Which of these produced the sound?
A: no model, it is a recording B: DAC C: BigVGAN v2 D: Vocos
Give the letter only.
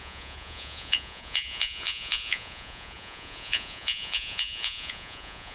D